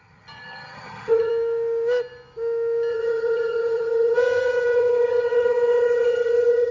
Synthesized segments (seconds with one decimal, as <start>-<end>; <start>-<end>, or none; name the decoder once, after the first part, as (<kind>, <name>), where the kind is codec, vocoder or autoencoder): 0.0-1.3 (vocoder, HiFi-GAN); 2.9-6.7